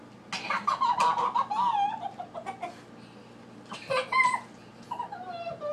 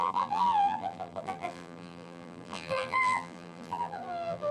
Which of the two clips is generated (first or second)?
second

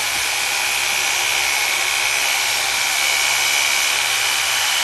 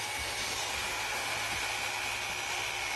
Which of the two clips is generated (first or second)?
first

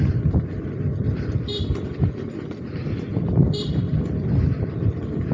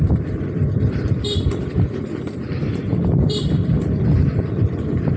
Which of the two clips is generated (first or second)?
second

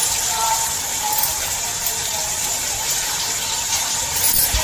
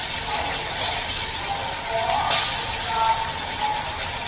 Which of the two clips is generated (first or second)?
first